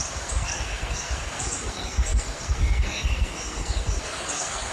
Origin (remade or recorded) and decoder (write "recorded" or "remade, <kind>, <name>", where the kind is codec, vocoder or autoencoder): remade, codec, SNAC